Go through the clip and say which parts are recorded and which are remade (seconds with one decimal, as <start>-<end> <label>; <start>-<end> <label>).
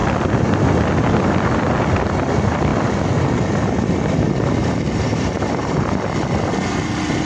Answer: 0.0-4.6 recorded; 4.6-5.9 remade; 5.9-7.3 recorded